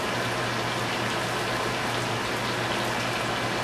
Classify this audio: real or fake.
real